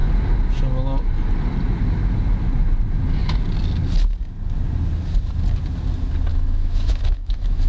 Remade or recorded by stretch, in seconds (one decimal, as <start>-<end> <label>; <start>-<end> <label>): 0.0-6.3 recorded; 6.3-7.7 remade